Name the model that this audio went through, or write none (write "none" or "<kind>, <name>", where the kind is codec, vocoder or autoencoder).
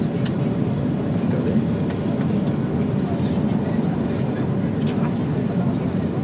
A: none